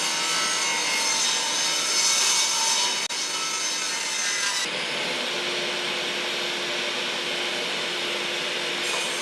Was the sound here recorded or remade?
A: recorded